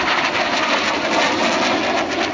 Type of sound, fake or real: real